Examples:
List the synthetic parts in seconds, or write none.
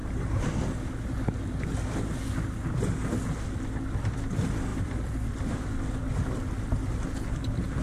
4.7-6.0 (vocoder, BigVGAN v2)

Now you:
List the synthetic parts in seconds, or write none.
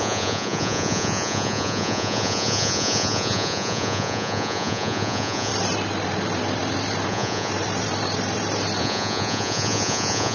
0.0-5.5 (vocoder, Vocos); 7.1-7.5; 8.8-10.3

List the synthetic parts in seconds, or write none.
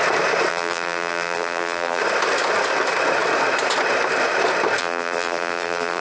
0.5-2.0 (vocoder, BigVGAN v2); 4.8-6.0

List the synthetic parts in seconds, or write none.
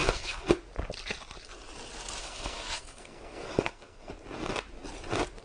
0.0-0.5 (codec, SNAC); 2.2-4.1